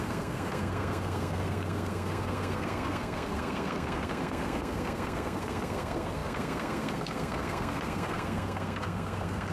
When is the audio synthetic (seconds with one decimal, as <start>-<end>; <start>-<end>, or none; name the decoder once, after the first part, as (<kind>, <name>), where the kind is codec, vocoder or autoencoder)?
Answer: 0.0-9.5 (codec, SNAC)